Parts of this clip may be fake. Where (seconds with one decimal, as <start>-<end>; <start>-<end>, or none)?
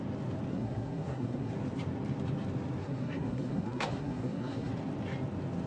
0.5-1.5; 2.8-4.7